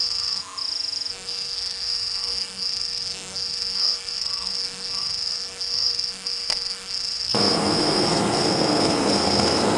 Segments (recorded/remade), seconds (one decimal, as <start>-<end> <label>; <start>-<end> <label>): 0.0-0.4 remade; 0.4-1.1 recorded; 1.1-9.8 remade

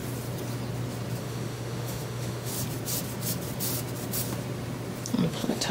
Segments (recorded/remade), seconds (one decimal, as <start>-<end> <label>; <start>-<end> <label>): 0.0-1.2 recorded; 1.2-2.5 remade; 2.5-5.3 recorded; 5.3-5.7 remade

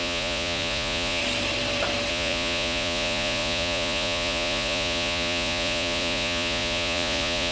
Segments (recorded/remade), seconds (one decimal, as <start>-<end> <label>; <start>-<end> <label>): 0.0-1.2 remade; 1.2-2.1 recorded; 2.1-7.5 remade

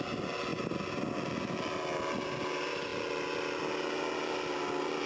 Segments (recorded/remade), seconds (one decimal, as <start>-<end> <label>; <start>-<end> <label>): 0.0-5.1 recorded

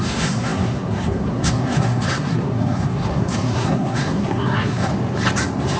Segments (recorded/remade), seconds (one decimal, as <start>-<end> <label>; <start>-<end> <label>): 0.0-4.9 remade; 4.9-5.8 recorded

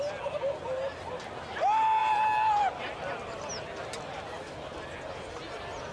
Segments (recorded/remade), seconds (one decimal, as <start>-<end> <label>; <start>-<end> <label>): 0.0-5.9 recorded

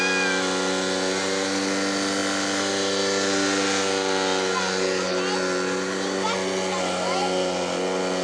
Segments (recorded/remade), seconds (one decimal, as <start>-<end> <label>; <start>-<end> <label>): 0.0-8.2 recorded

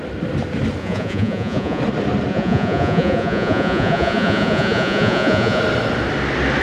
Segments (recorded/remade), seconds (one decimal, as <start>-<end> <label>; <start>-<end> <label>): 0.0-0.8 recorded; 0.8-1.8 remade; 1.8-2.3 recorded; 2.3-5.6 remade; 5.6-6.6 recorded